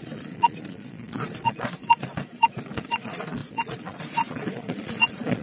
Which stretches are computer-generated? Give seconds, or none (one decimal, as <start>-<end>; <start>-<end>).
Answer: 0.0-5.4